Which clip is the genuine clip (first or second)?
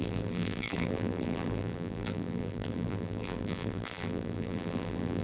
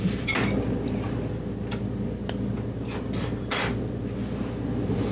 second